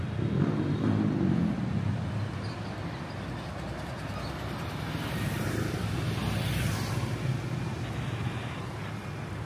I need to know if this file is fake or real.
real